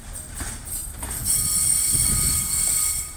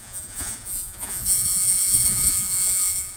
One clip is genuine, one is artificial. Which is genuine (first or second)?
first